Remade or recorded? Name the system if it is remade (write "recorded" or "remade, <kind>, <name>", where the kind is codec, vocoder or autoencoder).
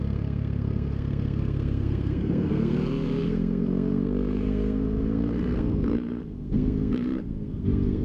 remade, codec, SNAC